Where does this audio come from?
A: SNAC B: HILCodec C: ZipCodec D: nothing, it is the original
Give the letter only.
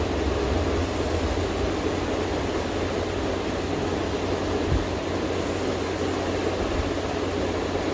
D